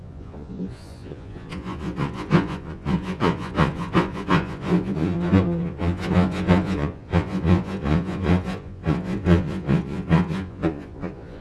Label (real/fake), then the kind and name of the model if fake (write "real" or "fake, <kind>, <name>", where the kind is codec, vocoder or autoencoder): fake, vocoder, Vocos